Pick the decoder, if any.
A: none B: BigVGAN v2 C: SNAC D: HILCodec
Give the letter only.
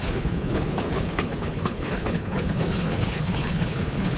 D